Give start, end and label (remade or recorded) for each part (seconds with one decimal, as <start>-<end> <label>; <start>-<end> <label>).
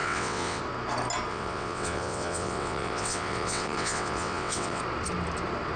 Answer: 0.0-0.6 remade; 0.6-1.3 recorded; 1.3-4.8 remade; 4.8-5.8 recorded